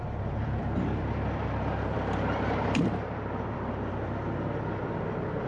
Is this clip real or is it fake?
fake